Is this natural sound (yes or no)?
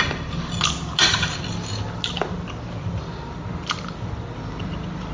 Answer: yes